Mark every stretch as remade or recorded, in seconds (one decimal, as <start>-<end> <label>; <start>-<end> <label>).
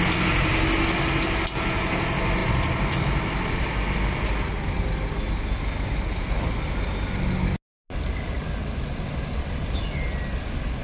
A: 0.0-10.8 recorded